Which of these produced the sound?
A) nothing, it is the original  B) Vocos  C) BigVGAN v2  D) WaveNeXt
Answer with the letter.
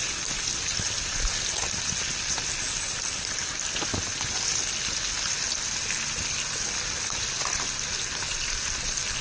A